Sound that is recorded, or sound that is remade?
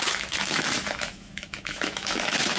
remade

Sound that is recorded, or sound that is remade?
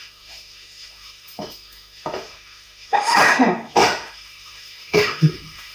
remade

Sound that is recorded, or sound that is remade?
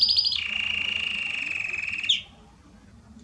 recorded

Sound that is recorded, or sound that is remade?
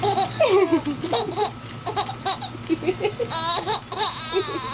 recorded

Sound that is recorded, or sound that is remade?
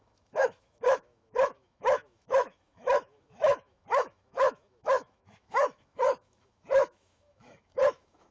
remade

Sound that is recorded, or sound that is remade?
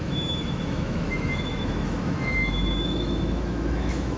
remade